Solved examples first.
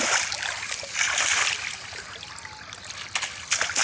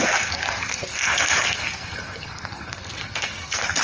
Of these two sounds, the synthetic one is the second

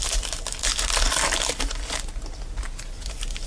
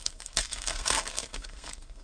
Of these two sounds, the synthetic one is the second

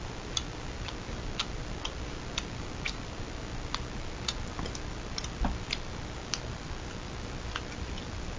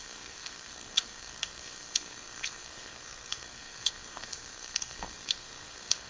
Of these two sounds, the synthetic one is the second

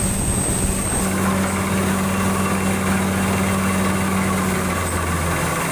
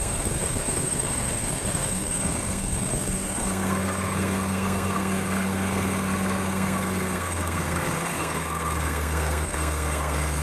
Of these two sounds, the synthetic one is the second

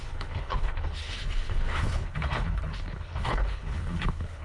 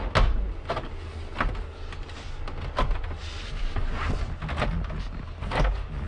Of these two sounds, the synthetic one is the first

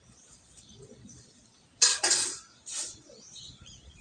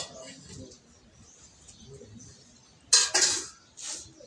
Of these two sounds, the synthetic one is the first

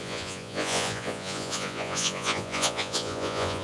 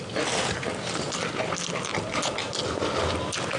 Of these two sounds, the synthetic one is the first